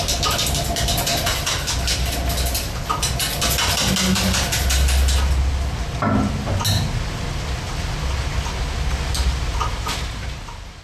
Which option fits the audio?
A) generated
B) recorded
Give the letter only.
B